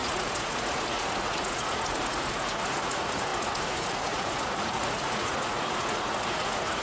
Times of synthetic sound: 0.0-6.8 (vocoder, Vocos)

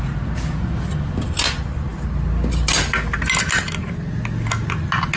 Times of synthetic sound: none

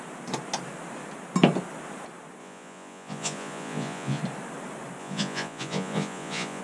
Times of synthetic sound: 2.4-4.2 (vocoder, Vocos); 5.0-6.6

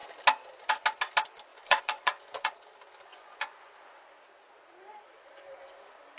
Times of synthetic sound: 1.5-2.5 (vocoder, Vocos); 3.1-3.7